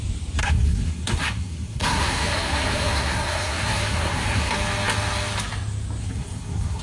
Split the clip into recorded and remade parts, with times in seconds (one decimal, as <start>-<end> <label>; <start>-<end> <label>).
0.0-0.4 recorded; 0.4-4.5 remade; 4.5-6.0 recorded; 6.0-6.8 remade